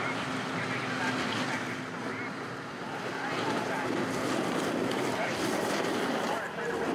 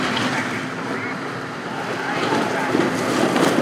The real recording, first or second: first